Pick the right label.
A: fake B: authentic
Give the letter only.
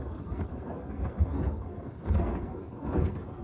A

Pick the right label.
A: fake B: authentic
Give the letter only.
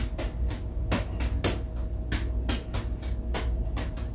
B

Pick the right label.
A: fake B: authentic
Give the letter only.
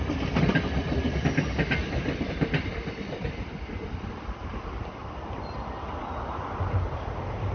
B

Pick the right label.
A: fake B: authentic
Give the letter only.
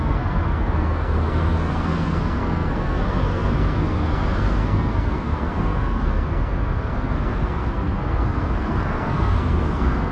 A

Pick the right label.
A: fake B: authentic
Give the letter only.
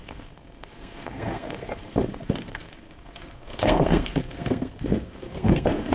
A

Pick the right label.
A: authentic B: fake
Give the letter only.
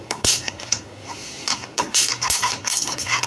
B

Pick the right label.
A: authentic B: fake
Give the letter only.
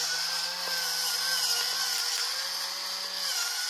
A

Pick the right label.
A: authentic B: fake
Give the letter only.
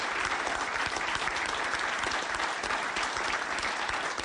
A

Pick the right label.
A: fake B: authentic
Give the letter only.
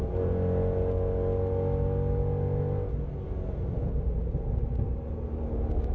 B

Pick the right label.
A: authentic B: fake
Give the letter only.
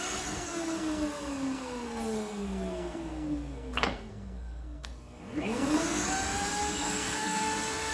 B